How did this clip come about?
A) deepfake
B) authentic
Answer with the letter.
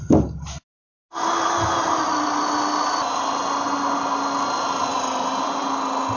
B